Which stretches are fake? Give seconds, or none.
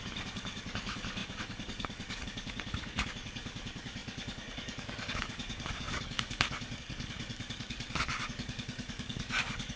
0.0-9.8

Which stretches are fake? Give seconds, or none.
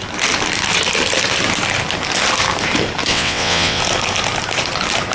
3.1-3.8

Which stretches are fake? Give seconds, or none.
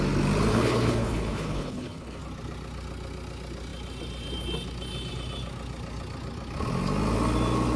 0.5-2.2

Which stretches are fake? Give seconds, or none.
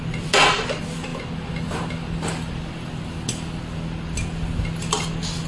none